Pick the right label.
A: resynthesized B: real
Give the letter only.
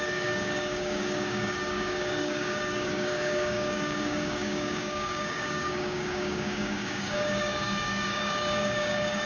A